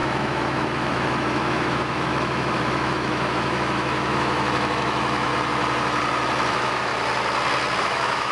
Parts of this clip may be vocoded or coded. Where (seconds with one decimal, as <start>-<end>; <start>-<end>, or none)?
0.0-5.3; 6.5-6.9; 7.8-8.3

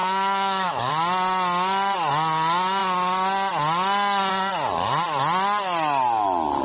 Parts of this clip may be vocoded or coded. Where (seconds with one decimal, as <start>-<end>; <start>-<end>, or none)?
0.0-0.9

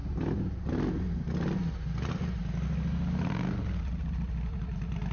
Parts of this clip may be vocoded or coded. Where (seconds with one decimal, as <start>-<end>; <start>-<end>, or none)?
none